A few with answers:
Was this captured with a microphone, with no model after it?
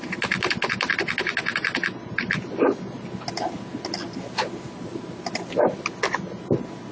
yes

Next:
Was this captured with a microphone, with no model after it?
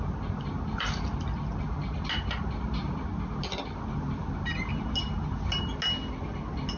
yes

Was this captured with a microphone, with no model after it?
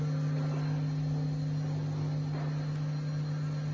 yes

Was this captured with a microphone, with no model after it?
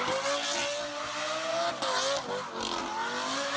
yes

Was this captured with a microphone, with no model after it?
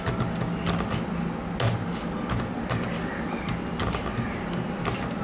yes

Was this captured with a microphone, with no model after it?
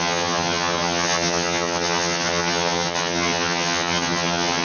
no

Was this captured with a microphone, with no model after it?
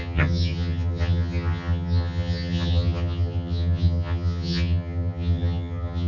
no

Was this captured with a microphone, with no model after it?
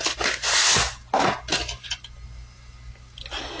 yes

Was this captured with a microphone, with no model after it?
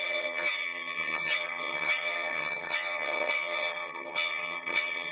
no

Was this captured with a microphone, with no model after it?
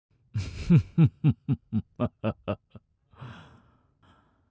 yes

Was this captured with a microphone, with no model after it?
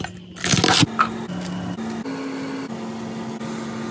yes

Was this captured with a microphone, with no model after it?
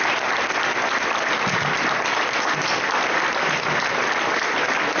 yes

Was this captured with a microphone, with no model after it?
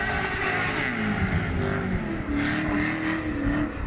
yes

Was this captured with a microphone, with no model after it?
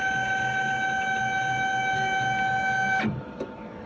yes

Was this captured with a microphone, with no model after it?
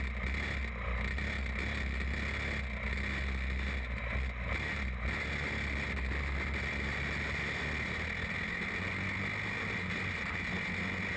yes